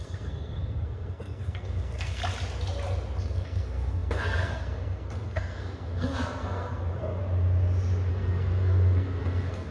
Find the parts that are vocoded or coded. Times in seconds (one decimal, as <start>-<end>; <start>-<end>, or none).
0.0-2.2; 3.2-7.2; 8.1-9.7